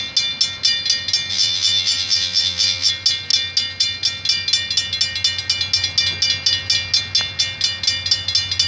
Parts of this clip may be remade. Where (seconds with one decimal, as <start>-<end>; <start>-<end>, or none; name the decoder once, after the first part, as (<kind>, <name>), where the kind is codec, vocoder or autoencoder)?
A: 1.3-2.9 (vocoder, BigVGAN v2)